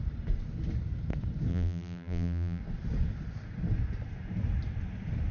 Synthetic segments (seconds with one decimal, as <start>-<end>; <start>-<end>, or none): 1.5-2.6